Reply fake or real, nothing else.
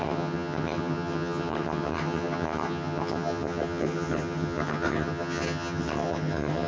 fake